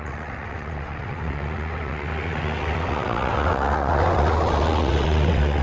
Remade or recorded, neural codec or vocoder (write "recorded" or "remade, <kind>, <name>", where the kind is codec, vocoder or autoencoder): remade, vocoder, WaveNeXt